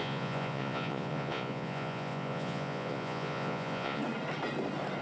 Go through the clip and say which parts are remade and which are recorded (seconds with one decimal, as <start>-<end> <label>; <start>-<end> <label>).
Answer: 0.0-4.0 remade; 4.0-5.0 recorded